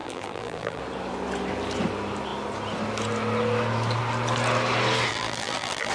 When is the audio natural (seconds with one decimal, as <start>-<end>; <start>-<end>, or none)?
0.8-5.1